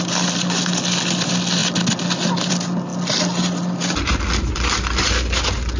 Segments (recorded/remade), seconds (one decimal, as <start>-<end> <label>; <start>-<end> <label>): 0.0-5.8 recorded